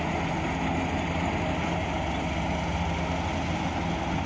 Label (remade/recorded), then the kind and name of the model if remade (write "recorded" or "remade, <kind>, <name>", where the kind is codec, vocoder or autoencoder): recorded